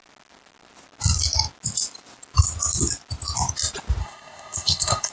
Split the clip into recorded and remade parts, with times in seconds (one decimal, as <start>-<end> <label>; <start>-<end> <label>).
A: 0.0-4.0 recorded; 4.0-5.1 remade